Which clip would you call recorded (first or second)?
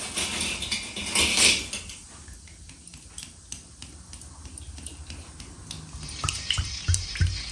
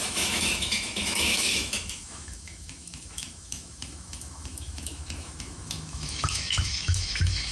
first